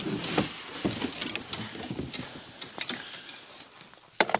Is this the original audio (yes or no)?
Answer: yes